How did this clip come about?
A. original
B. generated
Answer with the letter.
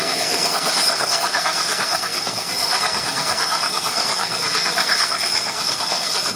B